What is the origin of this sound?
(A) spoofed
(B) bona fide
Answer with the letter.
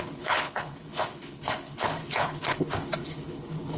A